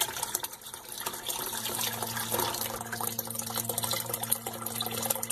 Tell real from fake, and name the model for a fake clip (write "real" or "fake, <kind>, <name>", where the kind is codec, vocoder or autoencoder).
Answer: real